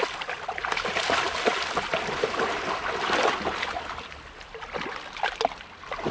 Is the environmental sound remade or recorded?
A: recorded